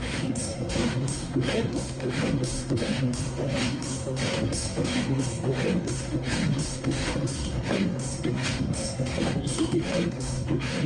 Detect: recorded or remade remade